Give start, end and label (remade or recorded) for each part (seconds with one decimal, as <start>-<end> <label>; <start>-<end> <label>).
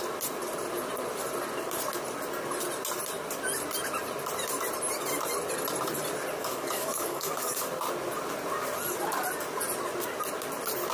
0.0-6.4 recorded; 6.4-7.7 remade; 7.7-10.9 recorded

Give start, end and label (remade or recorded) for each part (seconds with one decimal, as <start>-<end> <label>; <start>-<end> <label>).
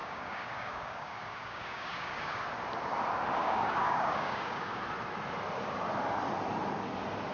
0.0-2.4 remade; 2.4-3.4 recorded; 3.4-4.8 remade; 4.8-7.3 recorded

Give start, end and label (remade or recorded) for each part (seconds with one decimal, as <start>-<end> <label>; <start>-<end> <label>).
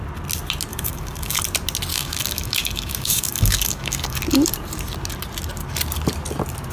0.0-0.7 recorded; 0.7-1.4 remade; 1.4-1.9 recorded; 1.9-4.2 remade; 4.2-6.7 recorded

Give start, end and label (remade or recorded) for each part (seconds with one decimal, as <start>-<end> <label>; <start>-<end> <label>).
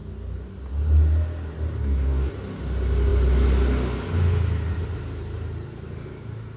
0.0-1.8 recorded; 1.8-2.3 remade; 2.3-6.6 recorded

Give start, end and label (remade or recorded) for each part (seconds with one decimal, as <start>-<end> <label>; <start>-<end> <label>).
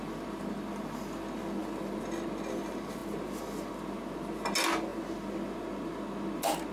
0.0-6.7 recorded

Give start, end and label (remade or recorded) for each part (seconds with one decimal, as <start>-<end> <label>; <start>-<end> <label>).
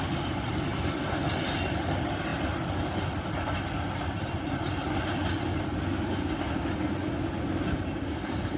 0.0-8.6 recorded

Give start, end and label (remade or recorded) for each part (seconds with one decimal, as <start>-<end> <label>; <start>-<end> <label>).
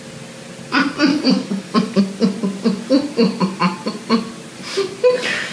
0.0-1.1 recorded; 1.1-2.0 remade; 2.0-5.5 recorded